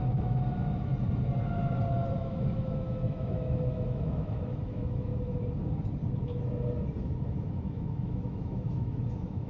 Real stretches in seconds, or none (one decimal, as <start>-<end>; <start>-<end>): 0.9-2.2; 5.1-7.0